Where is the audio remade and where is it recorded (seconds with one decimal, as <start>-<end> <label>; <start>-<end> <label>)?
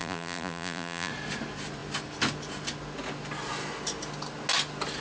0.0-1.1 remade; 1.1-5.0 recorded